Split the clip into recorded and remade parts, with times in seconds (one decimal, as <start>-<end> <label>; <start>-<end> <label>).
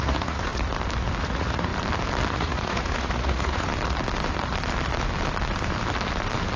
0.0-0.5 remade; 0.5-1.2 recorded; 1.2-1.7 remade; 1.7-2.3 recorded; 2.3-3.7 remade; 3.7-6.6 recorded